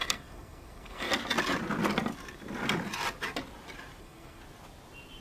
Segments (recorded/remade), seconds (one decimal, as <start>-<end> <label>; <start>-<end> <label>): 0.0-1.1 remade; 1.1-4.0 recorded; 4.0-4.4 remade; 4.4-5.2 recorded